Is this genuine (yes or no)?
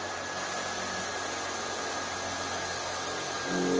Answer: yes